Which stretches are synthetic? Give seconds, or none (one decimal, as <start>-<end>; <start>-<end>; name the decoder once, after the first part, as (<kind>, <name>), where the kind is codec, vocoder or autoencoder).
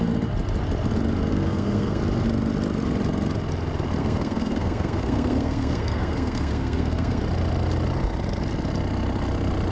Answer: 1.3-2.0 (codec, SNAC); 4.0-7.2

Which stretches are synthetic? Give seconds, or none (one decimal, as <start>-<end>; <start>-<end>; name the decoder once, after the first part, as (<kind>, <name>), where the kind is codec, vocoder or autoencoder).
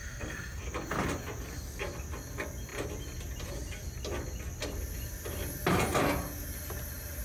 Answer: 0.0-0.6 (codec, SNAC)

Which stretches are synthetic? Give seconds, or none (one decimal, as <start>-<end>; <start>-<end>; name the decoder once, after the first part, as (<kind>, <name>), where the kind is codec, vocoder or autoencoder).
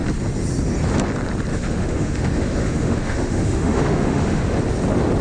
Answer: 1.5-4.4 (autoencoder, DAC-VAE)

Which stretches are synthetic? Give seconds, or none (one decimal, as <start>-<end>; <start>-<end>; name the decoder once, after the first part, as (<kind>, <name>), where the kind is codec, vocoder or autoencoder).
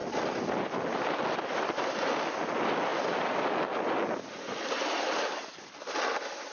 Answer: none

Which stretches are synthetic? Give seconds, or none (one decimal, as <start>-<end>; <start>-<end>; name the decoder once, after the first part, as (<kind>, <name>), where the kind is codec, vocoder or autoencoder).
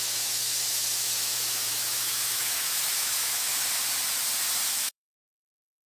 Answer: 0.0-3.5 (autoencoder, DAC-VAE); 4.7-5.9